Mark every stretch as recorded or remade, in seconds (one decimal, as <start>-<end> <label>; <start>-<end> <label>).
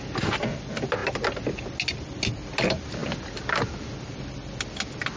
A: 0.0-3.0 recorded; 3.0-3.7 remade; 3.7-5.2 recorded